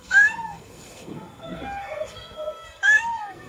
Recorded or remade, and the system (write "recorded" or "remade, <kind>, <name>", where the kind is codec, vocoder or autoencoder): remade, codec, SNAC